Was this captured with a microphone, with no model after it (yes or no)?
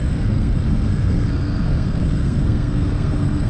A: no